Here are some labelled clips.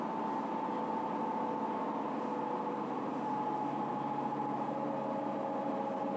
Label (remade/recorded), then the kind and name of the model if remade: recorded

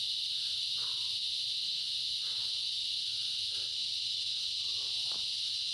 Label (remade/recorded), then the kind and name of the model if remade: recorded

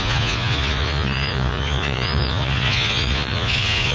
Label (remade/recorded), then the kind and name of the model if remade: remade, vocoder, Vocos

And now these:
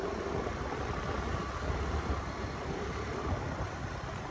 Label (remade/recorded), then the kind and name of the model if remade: recorded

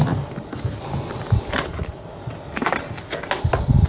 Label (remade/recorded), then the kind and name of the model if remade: recorded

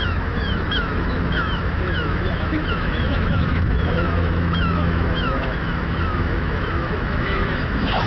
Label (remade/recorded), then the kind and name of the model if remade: remade, autoencoder, DAC-VAE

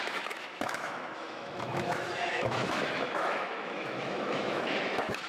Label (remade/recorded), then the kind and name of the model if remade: remade, autoencoder, DAC-VAE